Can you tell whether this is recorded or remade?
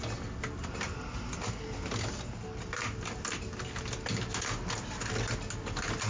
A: recorded